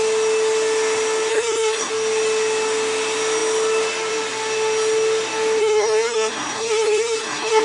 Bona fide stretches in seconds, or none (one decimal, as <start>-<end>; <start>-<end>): 0.0-1.3; 1.9-5.6